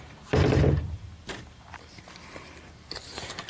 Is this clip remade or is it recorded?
remade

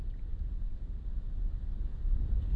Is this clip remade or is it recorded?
recorded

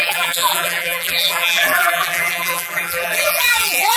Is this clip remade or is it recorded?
remade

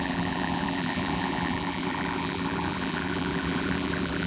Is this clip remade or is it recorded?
remade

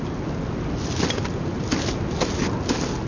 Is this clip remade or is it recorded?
recorded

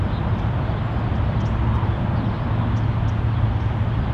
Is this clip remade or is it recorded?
recorded